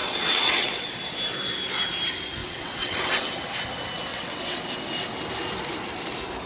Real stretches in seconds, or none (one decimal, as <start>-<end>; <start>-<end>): 0.9-2.4; 3.3-4.1; 4.6-6.5